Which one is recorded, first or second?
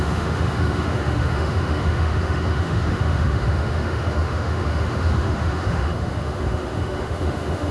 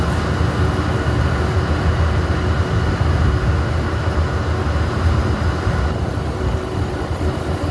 second